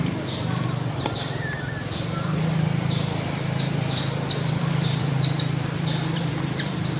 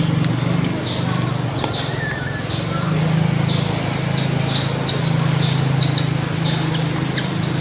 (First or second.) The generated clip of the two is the first